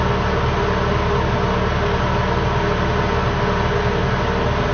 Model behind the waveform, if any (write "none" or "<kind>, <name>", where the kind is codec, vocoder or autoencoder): none